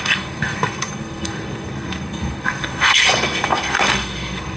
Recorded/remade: remade